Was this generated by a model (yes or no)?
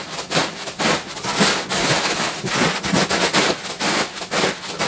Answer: no